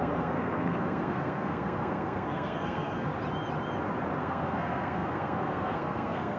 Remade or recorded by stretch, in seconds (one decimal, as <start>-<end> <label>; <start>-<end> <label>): 0.0-3.1 remade; 3.1-4.2 recorded; 4.2-6.4 remade